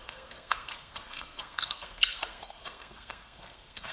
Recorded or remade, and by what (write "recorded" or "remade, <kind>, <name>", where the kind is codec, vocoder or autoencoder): remade, codec, SNAC